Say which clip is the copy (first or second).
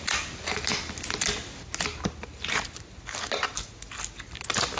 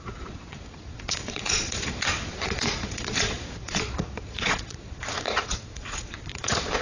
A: second